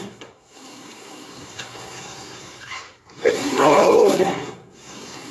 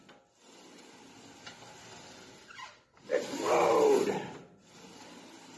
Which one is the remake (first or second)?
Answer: first